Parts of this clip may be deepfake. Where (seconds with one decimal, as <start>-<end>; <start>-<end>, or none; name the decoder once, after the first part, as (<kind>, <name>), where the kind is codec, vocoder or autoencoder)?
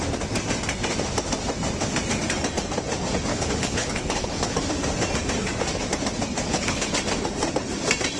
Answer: 3.3-4.6 (codec, HILCodec); 6.3-6.9